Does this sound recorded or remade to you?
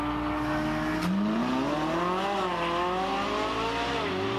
recorded